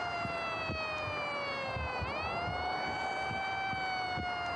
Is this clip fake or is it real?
real